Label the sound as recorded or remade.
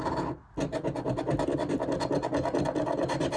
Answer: recorded